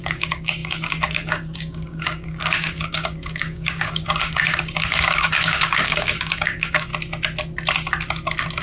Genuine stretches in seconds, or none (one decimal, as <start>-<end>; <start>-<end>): 6.9-8.6